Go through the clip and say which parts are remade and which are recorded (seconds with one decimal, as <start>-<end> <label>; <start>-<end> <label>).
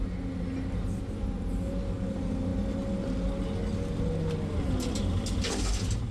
0.0-6.1 recorded